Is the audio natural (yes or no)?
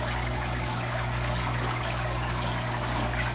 no